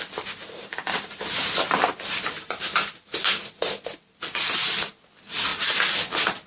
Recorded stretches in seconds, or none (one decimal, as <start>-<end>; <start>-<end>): 0.0-0.4; 4.1-6.5